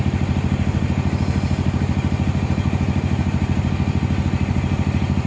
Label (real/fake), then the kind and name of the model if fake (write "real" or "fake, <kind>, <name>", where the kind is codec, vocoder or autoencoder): real